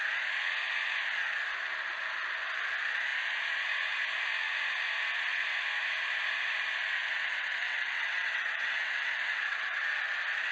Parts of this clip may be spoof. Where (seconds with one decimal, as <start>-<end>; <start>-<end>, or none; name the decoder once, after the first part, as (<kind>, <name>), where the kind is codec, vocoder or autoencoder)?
7.1-10.0 (vocoder, WaveNeXt)